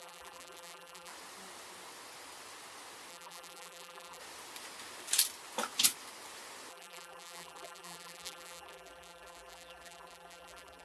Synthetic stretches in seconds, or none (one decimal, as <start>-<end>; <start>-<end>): 0.0-1.1; 3.1-4.2; 6.7-10.8